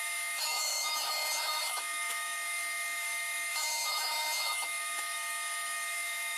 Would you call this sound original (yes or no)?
no